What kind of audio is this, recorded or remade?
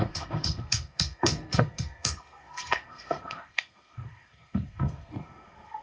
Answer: remade